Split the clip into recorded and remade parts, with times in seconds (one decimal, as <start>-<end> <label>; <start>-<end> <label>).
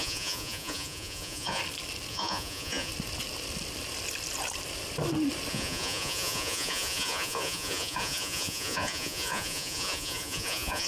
0.0-1.6 remade; 1.6-2.1 recorded; 2.1-2.9 remade; 2.9-5.5 recorded; 5.5-10.9 remade